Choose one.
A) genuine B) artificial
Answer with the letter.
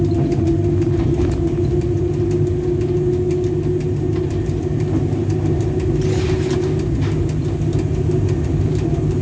A